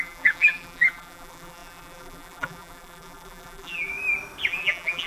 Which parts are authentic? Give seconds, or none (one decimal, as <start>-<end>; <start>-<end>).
3.9-4.5